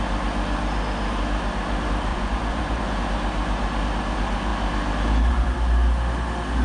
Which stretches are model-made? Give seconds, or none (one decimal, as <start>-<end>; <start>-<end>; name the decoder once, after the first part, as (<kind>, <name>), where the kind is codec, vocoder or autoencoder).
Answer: 2.1-2.8 (vocoder, Vocos)